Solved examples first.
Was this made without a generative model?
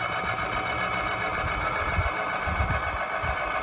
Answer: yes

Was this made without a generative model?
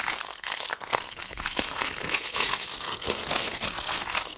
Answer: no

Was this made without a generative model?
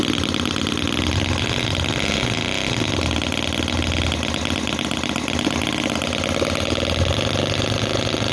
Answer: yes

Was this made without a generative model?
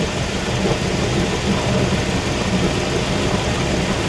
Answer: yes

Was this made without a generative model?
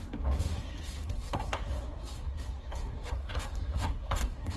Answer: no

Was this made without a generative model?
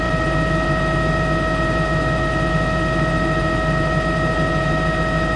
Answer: yes